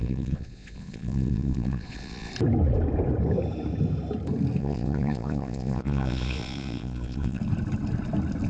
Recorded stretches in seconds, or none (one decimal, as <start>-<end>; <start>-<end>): 2.3-4.6; 7.4-8.5

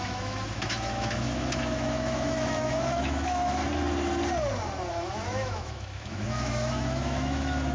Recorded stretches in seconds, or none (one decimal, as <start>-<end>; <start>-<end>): 3.6-4.9